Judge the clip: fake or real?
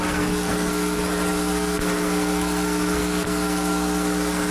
fake